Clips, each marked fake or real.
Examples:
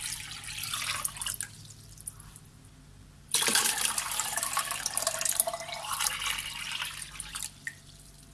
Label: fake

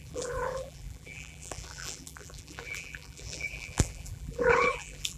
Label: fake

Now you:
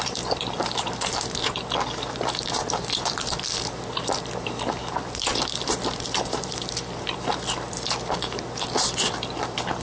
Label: fake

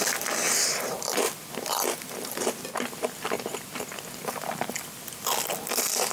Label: fake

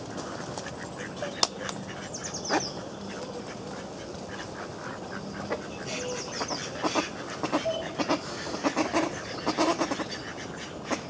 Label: real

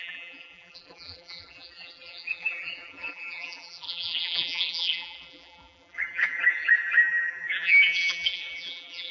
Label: fake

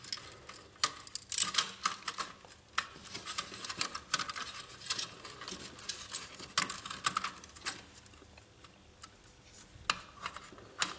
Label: real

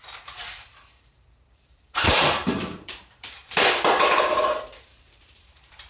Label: fake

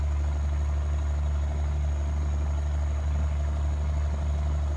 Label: real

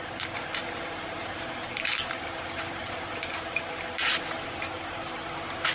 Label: fake